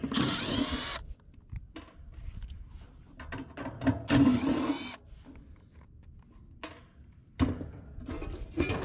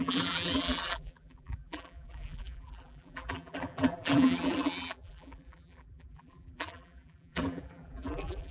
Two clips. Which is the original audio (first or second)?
first